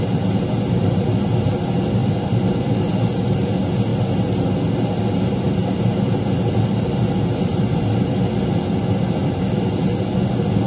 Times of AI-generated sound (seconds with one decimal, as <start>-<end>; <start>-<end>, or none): 2.0-2.7; 9.2-9.7